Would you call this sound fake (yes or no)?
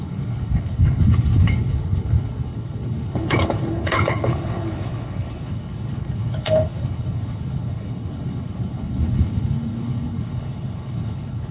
yes